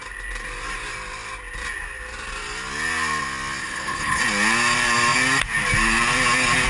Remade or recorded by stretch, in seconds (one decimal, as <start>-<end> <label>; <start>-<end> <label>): 0.0-3.6 recorded; 3.6-4.2 remade; 4.2-6.7 recorded